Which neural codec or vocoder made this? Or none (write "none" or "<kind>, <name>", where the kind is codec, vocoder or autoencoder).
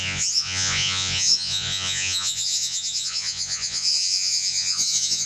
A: vocoder, Vocos